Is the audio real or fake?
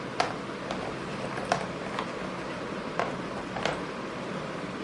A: real